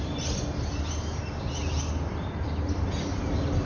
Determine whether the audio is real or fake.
real